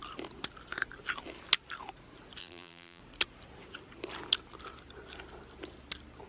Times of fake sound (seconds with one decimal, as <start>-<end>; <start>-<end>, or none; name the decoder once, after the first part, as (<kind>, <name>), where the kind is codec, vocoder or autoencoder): 2.4-3.0 (vocoder, BigVGAN v2)